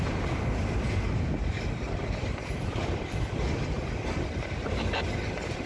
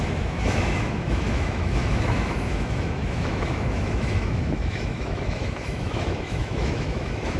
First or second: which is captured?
first